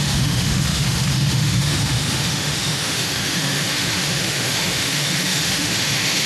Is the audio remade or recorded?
remade